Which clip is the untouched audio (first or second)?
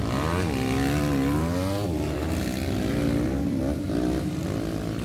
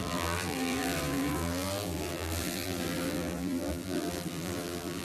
first